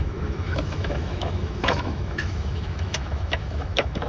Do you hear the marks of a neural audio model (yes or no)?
yes